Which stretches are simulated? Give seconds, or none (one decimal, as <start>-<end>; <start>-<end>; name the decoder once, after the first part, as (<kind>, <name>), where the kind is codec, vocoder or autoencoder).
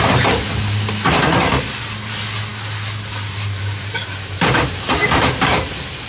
none